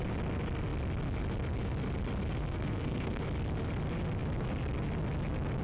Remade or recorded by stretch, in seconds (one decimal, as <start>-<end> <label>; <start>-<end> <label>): 0.0-2.4 recorded; 2.4-3.2 remade; 3.2-5.6 recorded